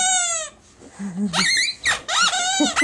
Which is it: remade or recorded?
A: recorded